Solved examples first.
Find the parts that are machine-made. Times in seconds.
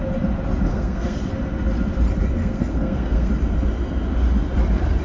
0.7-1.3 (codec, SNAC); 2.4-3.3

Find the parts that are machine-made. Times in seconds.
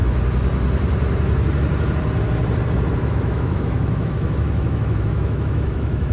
3.0-6.1 (autoencoder, DAC-VAE)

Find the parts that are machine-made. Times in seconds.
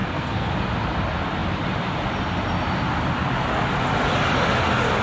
0.0-0.5 (codec, SNAC)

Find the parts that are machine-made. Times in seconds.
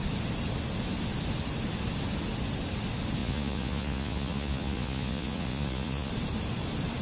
3.2-6.1 (vocoder, Vocos)